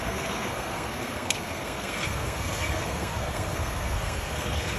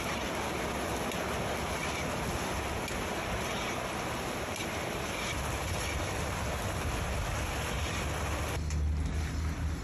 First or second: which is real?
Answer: second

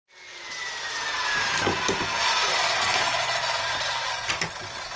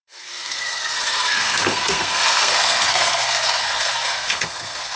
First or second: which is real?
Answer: first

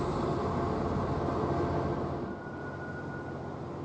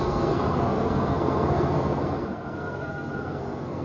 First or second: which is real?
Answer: first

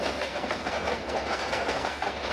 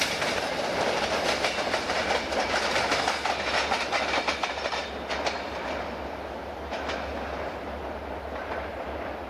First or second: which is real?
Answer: second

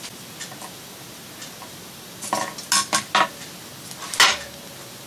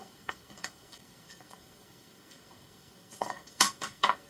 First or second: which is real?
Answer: first